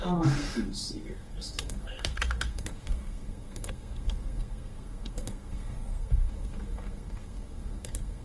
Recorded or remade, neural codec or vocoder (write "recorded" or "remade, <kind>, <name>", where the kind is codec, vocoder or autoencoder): remade, codec, SNAC